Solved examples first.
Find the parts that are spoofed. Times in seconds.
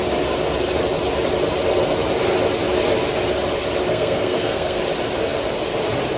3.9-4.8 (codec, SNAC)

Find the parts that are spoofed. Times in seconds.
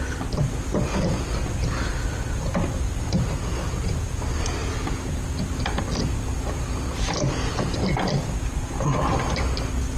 none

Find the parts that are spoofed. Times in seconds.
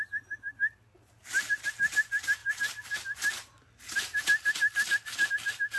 none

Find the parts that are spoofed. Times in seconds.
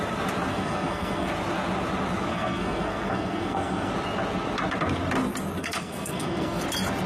0.5-1.3 (codec, SNAC); 2.3-3.9; 5.6-6.6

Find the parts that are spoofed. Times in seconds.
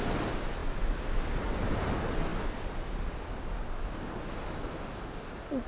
none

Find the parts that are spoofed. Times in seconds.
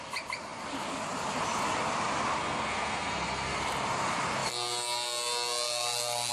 2.4-3.6 (codec, SNAC)